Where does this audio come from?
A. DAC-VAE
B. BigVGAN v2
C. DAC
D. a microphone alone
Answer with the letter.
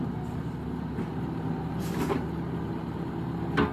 D